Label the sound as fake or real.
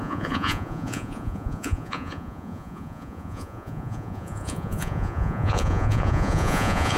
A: fake